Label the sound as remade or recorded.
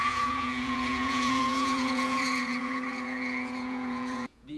remade